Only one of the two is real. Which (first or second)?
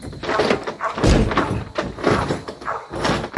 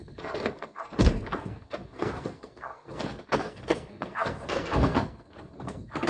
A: first